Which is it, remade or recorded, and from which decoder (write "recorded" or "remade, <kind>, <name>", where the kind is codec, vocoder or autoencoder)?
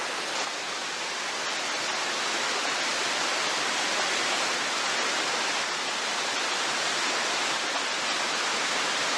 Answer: recorded